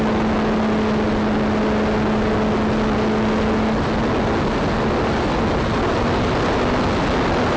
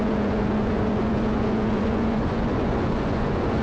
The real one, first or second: first